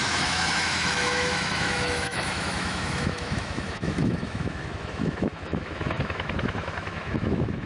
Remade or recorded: remade